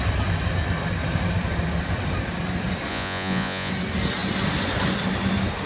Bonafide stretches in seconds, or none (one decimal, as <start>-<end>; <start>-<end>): 0.0-2.9; 3.7-5.7